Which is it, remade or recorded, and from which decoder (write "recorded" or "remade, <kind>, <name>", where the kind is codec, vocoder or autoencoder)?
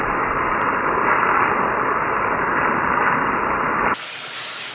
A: remade, vocoder, BigVGAN v2